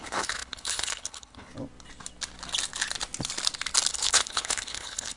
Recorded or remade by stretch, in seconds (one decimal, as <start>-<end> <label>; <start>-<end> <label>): 0.0-1.5 remade; 1.5-3.9 recorded; 3.9-5.2 remade